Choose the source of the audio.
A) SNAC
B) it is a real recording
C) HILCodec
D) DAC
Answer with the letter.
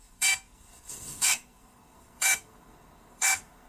A